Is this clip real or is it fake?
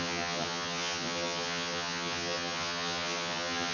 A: fake